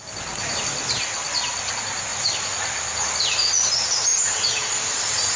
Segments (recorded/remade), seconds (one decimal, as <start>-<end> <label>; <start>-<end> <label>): 0.0-4.1 recorded; 4.1-4.7 remade; 4.7-5.4 recorded